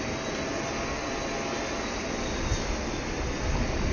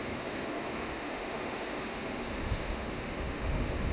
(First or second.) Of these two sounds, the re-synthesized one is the second